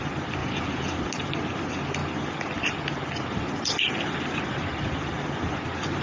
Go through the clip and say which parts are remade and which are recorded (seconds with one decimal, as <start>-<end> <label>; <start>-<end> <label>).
0.0-0.4 recorded; 0.4-0.9 remade; 0.9-6.0 recorded